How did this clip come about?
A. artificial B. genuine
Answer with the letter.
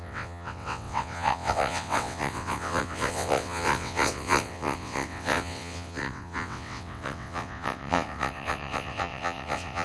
A